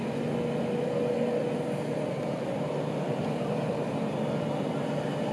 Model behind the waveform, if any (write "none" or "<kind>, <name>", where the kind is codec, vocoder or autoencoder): none